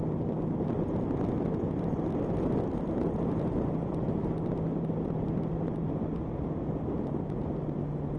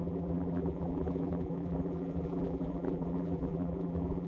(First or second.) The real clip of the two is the first